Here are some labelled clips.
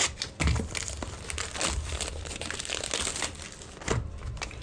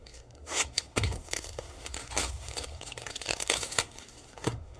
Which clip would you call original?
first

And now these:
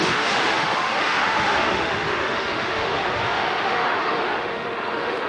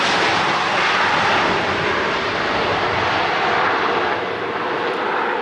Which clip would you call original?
second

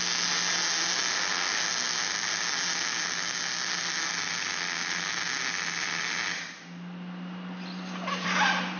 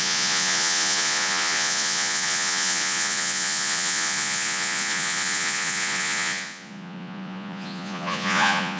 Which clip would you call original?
first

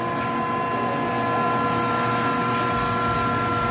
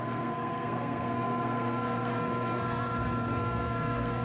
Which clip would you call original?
first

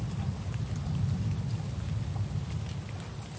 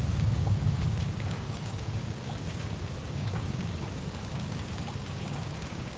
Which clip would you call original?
first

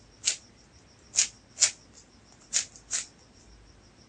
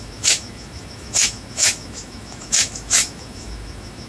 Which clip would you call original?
first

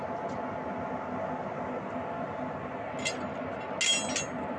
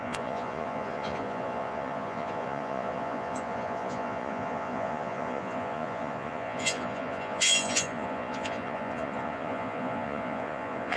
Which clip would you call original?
first